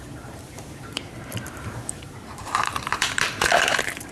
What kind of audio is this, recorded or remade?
remade